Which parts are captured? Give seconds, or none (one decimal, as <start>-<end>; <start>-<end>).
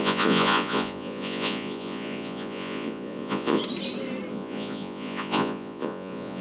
3.6-4.3